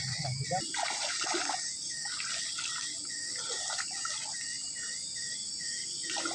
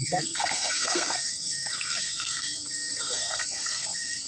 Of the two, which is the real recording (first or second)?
first